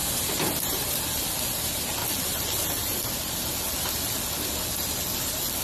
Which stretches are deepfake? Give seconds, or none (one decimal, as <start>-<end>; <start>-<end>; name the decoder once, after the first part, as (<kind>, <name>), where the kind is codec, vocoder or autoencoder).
0.0-1.0 (vocoder, BigVGAN v2)